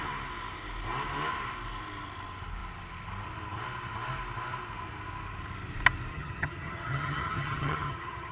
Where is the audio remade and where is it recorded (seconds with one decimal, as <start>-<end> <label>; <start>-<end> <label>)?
0.0-6.1 recorded; 6.1-8.3 remade